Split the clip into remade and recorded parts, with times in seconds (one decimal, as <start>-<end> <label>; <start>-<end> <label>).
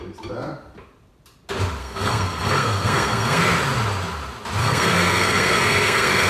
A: 0.0-1.8 recorded; 1.8-3.4 remade; 3.4-4.6 recorded; 4.6-6.3 remade